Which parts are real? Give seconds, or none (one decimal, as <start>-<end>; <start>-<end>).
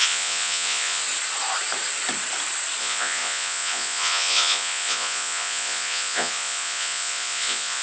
1.0-2.8